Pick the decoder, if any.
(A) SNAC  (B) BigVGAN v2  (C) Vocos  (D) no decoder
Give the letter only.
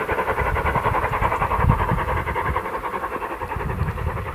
D